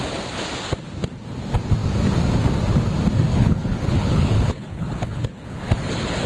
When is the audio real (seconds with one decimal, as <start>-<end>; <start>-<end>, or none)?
0.0-3.3